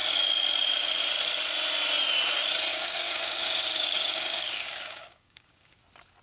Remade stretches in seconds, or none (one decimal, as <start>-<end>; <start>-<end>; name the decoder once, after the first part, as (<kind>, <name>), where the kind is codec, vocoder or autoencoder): 2.7-5.8 (codec, DAC)